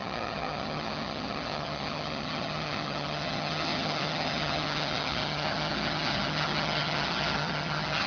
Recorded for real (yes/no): no